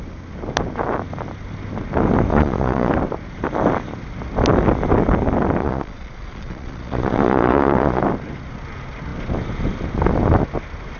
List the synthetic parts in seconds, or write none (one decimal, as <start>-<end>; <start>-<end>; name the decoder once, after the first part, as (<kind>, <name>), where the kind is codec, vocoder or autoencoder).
2.3-2.9 (vocoder, Vocos); 5.6-8.0